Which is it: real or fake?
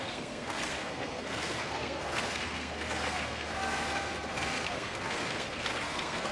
fake